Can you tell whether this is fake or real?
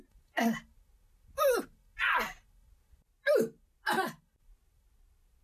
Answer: real